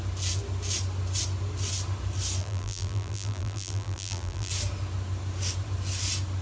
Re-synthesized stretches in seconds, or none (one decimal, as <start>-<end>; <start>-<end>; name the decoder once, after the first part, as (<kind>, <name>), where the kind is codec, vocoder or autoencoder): 2.4-4.5 (vocoder, BigVGAN v2)

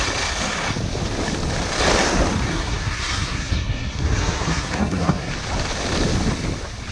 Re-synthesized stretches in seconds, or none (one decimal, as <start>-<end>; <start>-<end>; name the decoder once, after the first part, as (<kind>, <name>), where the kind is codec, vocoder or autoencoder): 2.5-5.3 (codec, SNAC)

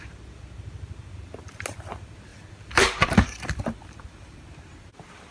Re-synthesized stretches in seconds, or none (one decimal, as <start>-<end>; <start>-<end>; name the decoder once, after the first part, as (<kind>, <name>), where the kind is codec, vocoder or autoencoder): 2.3-4.4 (vocoder, BigVGAN v2)

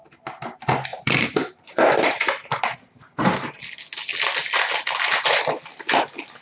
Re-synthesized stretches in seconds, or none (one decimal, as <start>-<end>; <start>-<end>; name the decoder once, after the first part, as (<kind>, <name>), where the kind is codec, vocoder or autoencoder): 0.9-3.3 (vocoder, BigVGAN v2)